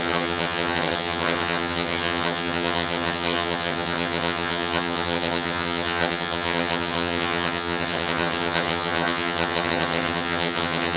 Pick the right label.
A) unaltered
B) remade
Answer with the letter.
B